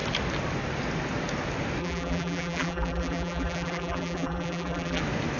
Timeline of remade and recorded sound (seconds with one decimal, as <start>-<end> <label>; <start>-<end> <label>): 0.0-1.8 recorded; 1.8-5.0 remade; 5.0-5.4 recorded